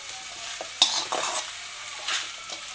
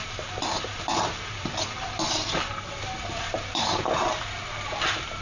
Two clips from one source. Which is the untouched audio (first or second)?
first